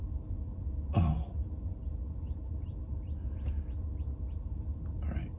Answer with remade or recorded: recorded